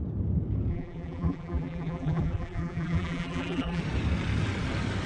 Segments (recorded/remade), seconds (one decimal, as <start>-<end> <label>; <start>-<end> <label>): 0.0-0.7 recorded; 0.7-3.8 remade; 3.8-5.1 recorded

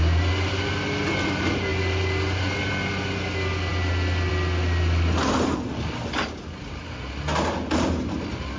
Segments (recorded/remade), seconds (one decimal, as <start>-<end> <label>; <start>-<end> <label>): 0.0-8.6 recorded

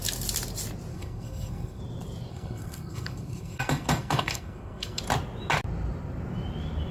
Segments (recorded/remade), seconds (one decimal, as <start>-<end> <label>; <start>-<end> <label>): 0.0-0.9 recorded; 0.9-1.8 remade; 1.8-2.3 recorded; 2.3-5.0 remade; 5.0-6.9 recorded

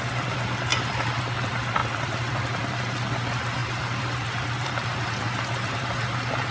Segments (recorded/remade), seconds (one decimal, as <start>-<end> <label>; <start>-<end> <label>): 0.0-0.7 recorded; 0.7-1.2 remade; 1.2-1.8 recorded; 1.8-3.1 remade; 3.1-3.6 recorded; 3.6-6.0 remade; 6.0-6.5 recorded

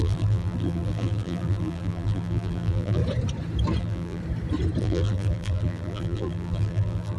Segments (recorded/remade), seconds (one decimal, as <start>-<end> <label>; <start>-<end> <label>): 0.0-3.0 remade; 3.0-3.8 recorded; 3.8-4.2 remade; 4.2-4.8 recorded; 4.8-7.2 remade